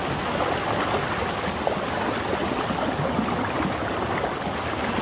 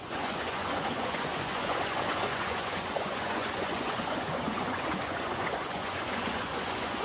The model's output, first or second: second